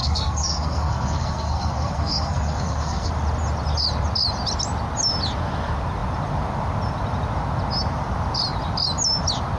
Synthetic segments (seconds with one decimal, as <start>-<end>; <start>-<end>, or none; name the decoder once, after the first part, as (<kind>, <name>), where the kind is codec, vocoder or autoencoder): 0.0-3.1 (codec, SNAC)